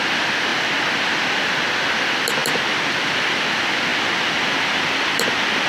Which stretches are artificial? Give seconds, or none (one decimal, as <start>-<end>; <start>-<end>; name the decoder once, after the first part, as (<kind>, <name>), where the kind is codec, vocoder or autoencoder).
0.0-0.5 (vocoder, BigVGAN v2); 1.9-3.9; 4.5-5.7